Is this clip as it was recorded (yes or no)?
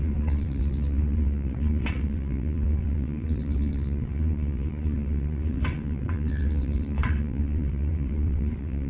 no